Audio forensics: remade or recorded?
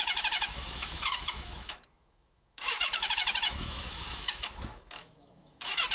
remade